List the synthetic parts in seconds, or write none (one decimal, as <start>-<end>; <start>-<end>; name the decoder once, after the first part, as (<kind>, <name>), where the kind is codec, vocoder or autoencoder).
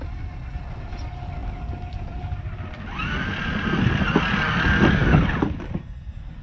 none